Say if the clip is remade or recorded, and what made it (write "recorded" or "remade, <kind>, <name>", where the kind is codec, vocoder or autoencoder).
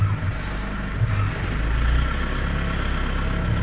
recorded